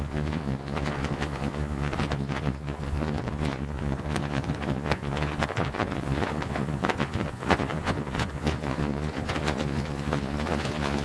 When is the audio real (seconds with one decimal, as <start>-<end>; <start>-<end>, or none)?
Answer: none